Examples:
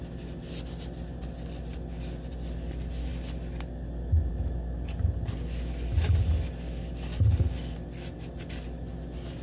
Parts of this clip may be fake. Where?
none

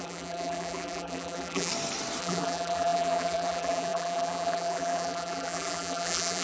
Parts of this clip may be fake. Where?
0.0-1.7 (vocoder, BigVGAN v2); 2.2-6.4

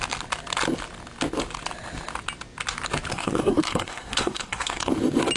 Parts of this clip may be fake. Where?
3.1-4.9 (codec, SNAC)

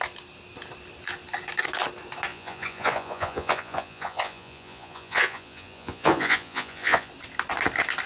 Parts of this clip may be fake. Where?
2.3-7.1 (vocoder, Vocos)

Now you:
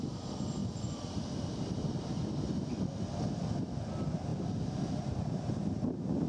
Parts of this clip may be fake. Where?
0.6-3.2 (vocoder, BigVGAN v2); 4.3-4.8

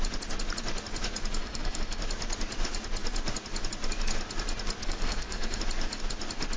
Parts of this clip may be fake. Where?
1.4-2.0 (codec, DAC); 4.8-5.6

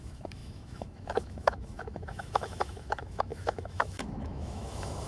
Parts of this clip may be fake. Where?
0.0-5.1 (autoencoder, DAC-VAE)